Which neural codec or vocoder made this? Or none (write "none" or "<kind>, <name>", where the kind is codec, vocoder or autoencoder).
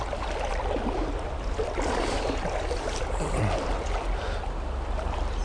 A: none